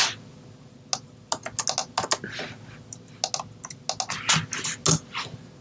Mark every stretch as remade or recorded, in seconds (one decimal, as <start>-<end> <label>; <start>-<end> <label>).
0.0-5.6 recorded